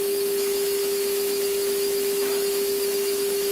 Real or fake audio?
fake